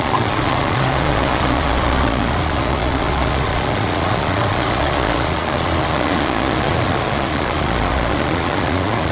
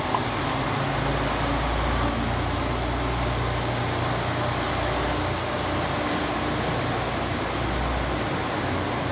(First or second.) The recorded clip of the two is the second